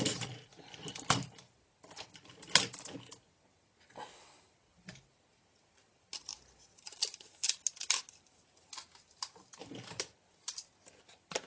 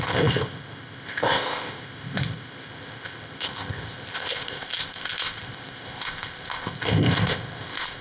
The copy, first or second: second